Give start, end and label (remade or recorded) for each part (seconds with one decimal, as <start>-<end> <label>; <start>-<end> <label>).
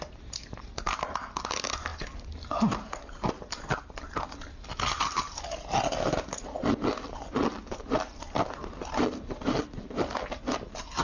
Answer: 0.0-11.0 recorded